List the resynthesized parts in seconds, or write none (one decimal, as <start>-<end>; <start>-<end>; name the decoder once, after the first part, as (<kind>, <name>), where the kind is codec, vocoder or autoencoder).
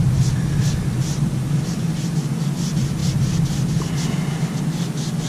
none